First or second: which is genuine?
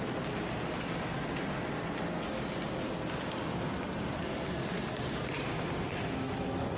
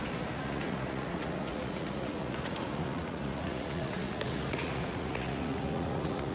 first